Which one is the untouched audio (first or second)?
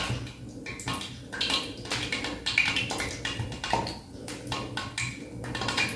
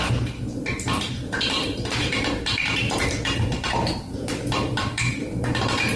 first